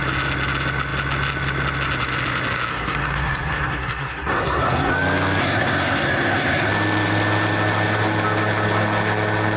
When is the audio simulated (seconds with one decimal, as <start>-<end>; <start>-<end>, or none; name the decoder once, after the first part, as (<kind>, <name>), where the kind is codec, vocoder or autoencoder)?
2.7-4.9 (codec, SNAC); 5.4-6.7

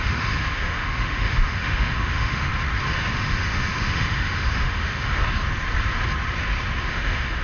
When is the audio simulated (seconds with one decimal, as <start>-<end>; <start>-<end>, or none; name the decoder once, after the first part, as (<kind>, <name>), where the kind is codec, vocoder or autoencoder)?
0.0-2.5 (autoencoder, DAC-VAE); 3.1-5.2; 6.8-7.4